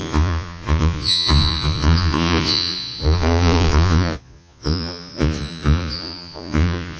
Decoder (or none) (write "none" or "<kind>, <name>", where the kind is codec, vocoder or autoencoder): vocoder, Vocos